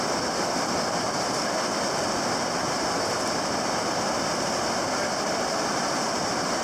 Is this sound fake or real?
real